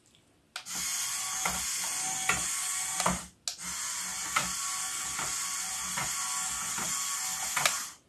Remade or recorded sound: recorded